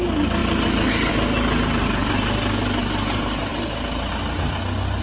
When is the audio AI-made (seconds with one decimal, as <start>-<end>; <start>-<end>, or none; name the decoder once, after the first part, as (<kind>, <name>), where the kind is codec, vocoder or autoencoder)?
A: none